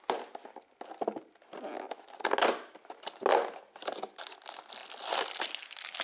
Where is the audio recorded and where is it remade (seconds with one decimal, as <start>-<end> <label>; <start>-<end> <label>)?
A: 0.0-6.0 recorded